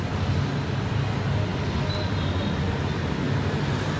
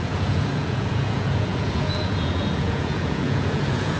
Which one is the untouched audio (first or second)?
first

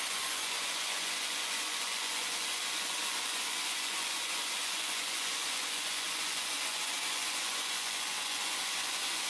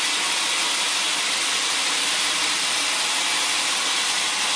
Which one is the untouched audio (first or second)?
second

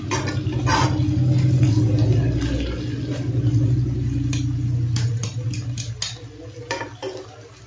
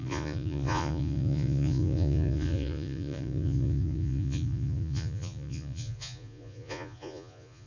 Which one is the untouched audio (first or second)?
first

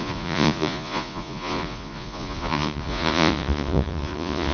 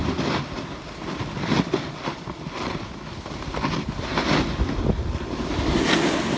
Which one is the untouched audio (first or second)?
second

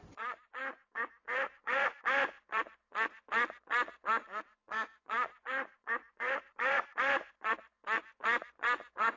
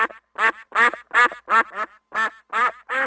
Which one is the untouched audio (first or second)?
second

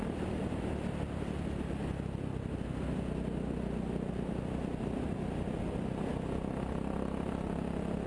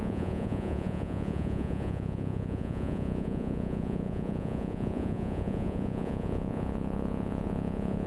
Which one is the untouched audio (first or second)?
first